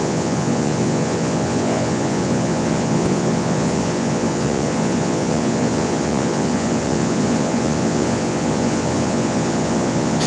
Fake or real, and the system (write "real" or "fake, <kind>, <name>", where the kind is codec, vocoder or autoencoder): fake, vocoder, Vocos